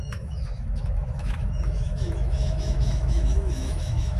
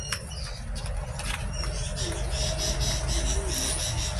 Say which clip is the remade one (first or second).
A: first